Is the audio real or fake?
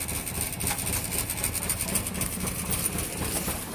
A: real